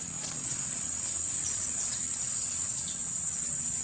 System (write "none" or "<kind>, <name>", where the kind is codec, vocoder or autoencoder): vocoder, Vocos